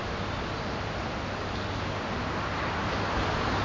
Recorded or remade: recorded